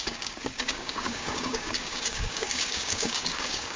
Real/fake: fake